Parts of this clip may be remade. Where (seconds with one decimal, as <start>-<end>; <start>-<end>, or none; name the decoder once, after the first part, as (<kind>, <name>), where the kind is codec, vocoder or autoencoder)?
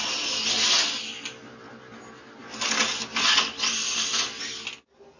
none